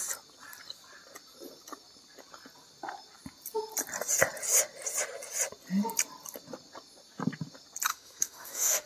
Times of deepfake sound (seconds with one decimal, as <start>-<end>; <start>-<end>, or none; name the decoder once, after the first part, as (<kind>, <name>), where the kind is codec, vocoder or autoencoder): 7.9-8.9 (autoencoder, DAC-VAE)